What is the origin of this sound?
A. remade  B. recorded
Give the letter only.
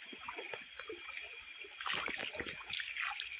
B